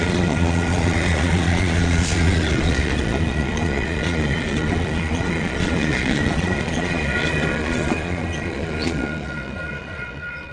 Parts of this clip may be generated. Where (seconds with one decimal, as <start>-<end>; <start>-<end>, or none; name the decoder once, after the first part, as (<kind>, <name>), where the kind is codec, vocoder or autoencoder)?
0.0-10.5 (vocoder, Vocos)